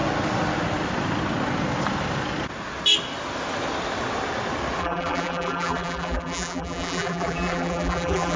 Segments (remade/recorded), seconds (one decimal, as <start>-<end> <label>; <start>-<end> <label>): 0.0-4.8 recorded; 4.8-8.4 remade